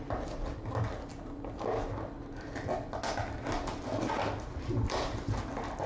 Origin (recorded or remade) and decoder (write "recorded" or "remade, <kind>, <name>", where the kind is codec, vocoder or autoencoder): recorded